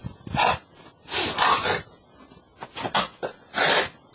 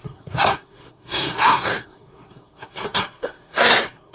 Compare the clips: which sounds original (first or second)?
first